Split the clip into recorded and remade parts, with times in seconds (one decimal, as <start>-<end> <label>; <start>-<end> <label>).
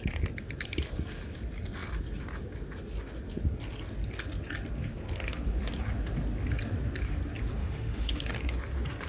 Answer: 0.0-7.6 recorded; 7.6-8.2 remade; 8.2-9.1 recorded